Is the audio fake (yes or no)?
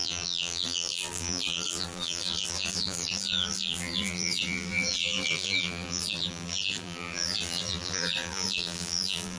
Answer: yes